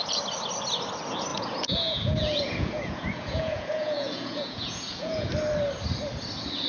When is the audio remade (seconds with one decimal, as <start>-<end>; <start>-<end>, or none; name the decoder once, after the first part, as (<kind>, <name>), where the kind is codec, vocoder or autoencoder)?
1.3-5.3 (vocoder, Vocos)